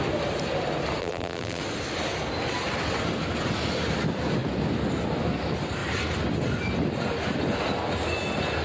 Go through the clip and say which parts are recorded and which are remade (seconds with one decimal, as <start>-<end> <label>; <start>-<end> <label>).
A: 0.0-1.0 recorded; 1.0-1.6 remade; 1.6-8.6 recorded